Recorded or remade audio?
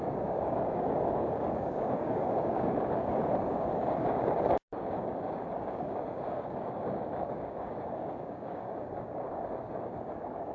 remade